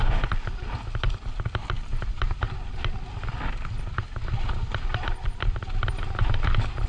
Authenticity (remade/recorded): recorded